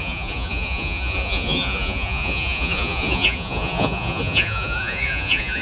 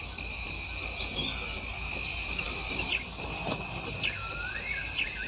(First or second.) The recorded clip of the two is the second